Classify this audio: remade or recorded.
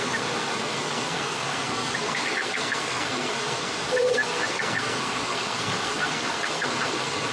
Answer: remade